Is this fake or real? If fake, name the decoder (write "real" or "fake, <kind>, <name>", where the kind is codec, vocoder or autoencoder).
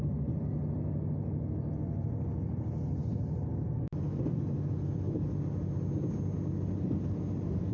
real